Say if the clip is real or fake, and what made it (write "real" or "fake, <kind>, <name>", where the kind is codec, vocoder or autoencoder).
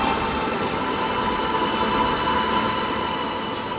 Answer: real